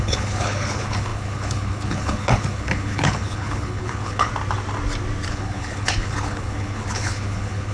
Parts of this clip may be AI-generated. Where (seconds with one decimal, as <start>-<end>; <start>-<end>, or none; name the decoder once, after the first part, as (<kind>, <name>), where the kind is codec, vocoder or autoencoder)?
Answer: 0.0-4.3 (codec, HILCodec); 5.3-7.7

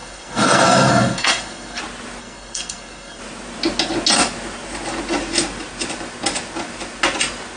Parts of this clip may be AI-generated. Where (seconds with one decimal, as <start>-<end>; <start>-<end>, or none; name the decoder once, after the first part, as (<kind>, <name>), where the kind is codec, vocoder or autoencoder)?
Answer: 0.0-1.8 (codec, SNAC); 2.2-3.2

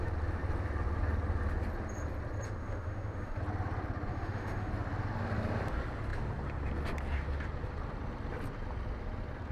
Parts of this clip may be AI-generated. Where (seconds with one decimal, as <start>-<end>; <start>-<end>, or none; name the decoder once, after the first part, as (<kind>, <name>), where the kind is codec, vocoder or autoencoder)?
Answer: 2.6-3.4 (autoencoder, DAC-VAE); 4.1-4.7

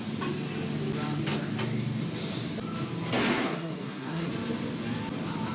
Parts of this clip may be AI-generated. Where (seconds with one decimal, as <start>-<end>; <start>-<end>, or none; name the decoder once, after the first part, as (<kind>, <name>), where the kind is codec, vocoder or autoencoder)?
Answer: 3.3-4.3 (codec, SNAC)

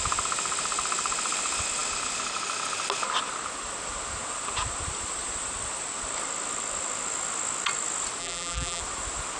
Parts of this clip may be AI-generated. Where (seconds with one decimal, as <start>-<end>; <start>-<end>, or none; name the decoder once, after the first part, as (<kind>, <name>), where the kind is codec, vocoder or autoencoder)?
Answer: 8.2-8.8 (vocoder, BigVGAN v2)

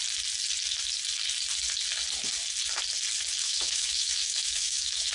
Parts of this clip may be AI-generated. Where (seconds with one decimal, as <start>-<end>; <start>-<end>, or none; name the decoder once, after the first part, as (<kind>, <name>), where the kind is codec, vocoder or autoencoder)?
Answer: 3.4-5.1 (autoencoder, DAC-VAE)